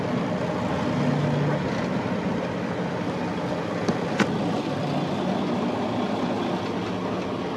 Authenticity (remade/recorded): recorded